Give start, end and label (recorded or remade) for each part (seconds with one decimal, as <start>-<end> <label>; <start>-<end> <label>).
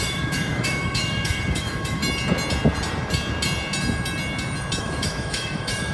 0.0-2.0 remade; 2.0-4.8 recorded; 4.8-5.9 remade